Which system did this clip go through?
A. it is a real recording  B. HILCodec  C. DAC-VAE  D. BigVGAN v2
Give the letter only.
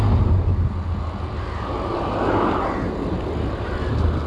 A